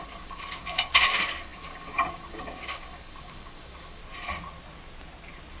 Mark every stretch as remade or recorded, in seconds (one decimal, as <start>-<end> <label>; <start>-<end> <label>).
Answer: 0.0-4.0 remade; 4.0-5.6 recorded